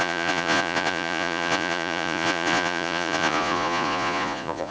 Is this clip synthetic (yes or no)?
yes